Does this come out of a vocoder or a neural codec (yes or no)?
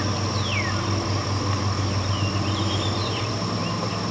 no